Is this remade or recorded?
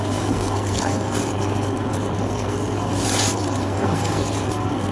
remade